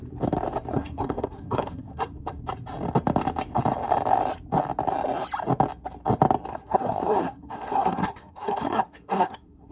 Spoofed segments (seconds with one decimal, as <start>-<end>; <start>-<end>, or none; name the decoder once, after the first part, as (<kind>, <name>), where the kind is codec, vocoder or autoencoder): 0.7-2.4 (codec, SNAC); 6.5-9.7